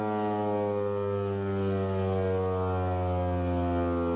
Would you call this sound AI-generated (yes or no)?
no